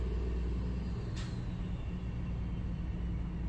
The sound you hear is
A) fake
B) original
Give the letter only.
B